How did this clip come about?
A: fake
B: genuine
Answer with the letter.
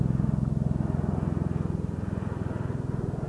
B